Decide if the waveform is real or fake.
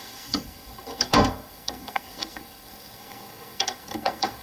fake